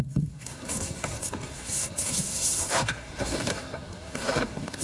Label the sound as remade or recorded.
remade